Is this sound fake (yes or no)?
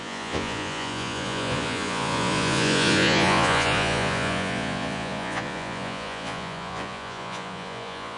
yes